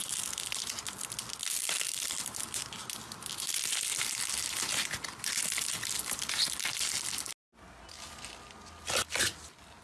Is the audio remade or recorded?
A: recorded